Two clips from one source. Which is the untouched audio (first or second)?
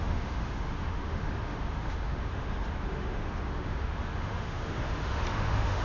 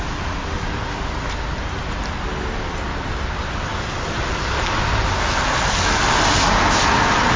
second